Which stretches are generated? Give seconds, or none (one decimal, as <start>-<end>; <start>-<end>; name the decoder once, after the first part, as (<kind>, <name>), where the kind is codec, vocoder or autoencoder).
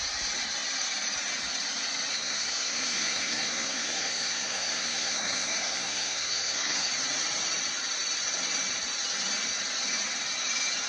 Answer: 2.1-6.9 (codec, SNAC)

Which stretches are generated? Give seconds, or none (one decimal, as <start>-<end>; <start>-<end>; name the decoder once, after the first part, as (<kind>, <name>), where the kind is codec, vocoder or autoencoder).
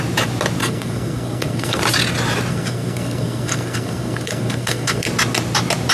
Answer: 0.6-1.8 (codec, SNAC); 2.5-5.1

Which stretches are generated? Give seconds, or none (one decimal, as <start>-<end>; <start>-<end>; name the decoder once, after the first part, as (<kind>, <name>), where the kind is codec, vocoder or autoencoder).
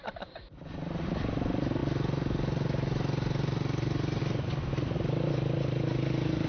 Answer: none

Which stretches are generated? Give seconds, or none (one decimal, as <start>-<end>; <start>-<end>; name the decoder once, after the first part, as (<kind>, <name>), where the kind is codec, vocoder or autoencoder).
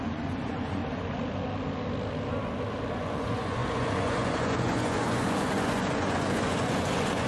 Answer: 0.0-0.8 (vocoder, Vocos); 2.9-7.3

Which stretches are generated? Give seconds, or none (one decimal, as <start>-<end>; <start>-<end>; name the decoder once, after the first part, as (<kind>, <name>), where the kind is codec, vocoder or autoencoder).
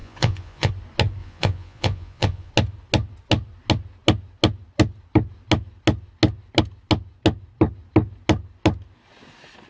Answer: 0.0-0.7 (vocoder, Vocos); 1.2-2.5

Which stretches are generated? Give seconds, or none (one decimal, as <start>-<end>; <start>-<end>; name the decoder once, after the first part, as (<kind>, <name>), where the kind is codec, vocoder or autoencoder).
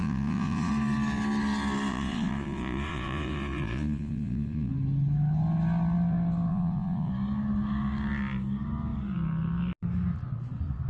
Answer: 0.0-0.7 (vocoder, Vocos); 1.9-4.7; 6.5-7.1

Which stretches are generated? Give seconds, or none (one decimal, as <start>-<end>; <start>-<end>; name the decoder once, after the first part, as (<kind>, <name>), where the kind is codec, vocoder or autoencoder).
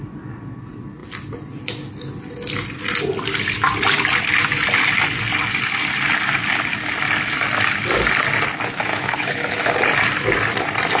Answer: 8.9-9.7 (autoencoder, DAC-VAE)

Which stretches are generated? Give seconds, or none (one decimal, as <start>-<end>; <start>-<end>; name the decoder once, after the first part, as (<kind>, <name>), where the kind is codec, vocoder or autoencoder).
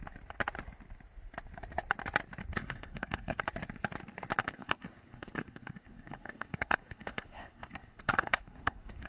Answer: 2.6-3.4 (codec, SNAC); 4.4-9.1